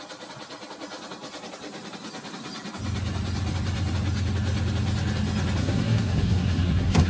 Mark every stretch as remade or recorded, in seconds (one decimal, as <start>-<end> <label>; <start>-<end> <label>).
0.0-5.6 recorded; 5.6-7.1 remade